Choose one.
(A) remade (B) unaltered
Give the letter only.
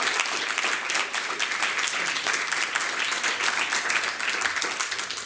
B